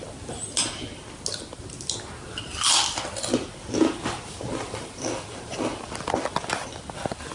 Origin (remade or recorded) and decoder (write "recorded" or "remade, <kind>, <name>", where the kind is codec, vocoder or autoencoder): recorded